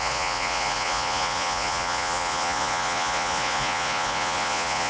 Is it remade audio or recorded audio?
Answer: remade